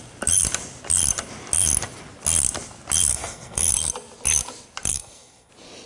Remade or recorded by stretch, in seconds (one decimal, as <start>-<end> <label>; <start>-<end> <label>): 0.0-3.1 recorded; 3.1-3.7 remade; 3.7-4.9 recorded; 4.9-5.5 remade; 5.5-5.9 recorded